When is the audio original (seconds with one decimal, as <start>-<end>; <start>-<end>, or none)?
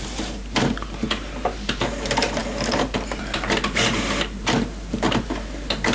2.4-3.2